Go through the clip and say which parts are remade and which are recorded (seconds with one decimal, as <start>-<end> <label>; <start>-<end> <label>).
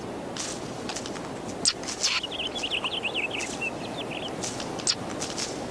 0.0-5.7 recorded